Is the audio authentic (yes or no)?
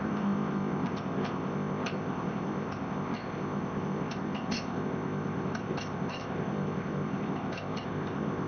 no